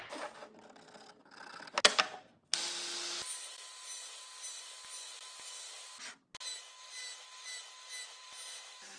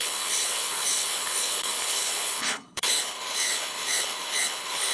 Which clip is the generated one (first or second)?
second